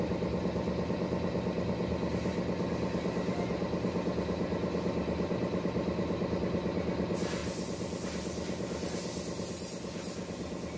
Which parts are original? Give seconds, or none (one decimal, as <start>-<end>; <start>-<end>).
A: 0.0-10.8